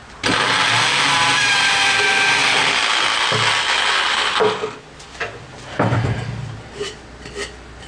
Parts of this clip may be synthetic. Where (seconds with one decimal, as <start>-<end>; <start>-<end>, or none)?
none